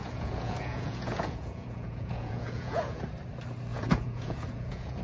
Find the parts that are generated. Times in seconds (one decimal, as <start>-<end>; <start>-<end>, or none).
0.0-3.0; 3.7-5.0